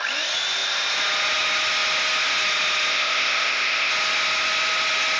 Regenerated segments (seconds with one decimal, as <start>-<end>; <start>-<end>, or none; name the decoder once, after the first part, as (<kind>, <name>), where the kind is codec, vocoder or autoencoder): 2.9-3.9 (codec, ZipCodec)